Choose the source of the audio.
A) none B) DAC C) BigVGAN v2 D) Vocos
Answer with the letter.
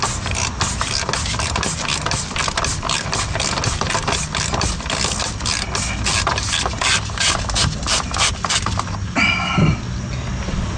A